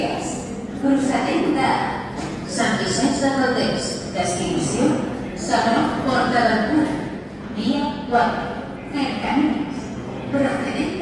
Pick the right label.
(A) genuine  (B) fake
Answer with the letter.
B